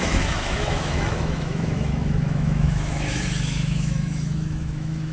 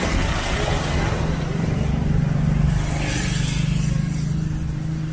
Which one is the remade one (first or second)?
first